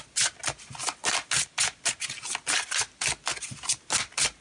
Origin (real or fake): real